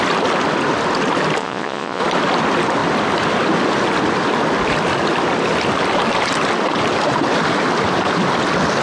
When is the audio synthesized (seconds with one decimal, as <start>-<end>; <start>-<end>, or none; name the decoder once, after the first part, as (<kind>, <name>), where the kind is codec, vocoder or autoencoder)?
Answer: 1.4-2.0 (vocoder, Vocos)